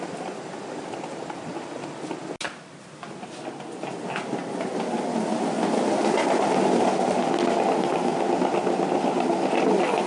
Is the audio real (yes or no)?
yes